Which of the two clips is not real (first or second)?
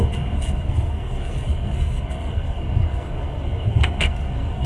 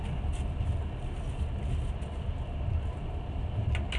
first